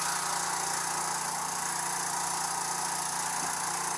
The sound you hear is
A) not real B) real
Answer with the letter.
B